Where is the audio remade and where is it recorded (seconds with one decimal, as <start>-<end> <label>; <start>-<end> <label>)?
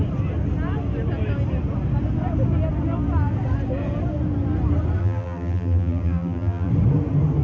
0.0-5.0 recorded; 5.0-6.7 remade; 6.7-7.4 recorded